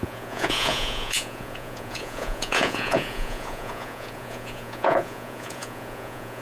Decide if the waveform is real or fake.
fake